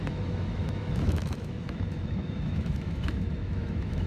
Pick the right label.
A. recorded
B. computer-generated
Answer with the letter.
B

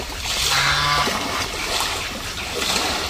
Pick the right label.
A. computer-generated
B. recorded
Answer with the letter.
B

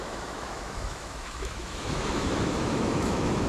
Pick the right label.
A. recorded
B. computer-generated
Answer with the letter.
B